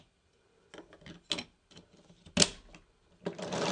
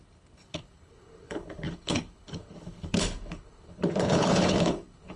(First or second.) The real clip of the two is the first